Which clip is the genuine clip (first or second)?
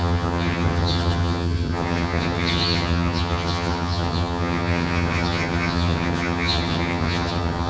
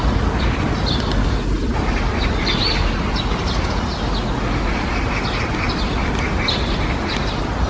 second